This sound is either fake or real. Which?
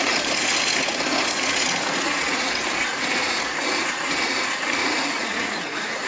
fake